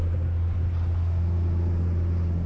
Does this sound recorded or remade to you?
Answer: recorded